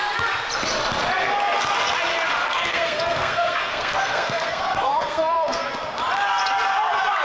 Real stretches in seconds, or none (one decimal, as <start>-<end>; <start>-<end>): 0.0-2.4; 5.7-7.2